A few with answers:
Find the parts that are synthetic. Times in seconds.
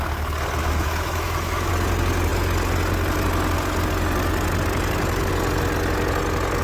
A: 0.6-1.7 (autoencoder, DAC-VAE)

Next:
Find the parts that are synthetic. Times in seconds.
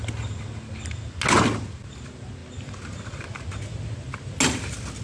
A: none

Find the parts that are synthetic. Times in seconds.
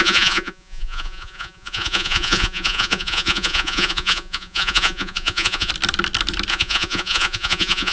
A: 0.0-5.7 (vocoder, Vocos); 6.5-7.9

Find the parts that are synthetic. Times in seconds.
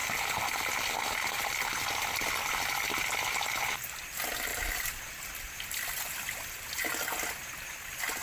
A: 4.5-6.0 (vocoder, BigVGAN v2)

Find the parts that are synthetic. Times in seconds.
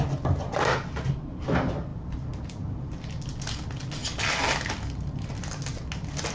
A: none